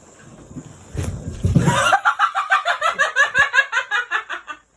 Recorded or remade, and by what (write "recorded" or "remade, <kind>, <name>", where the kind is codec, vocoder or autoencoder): recorded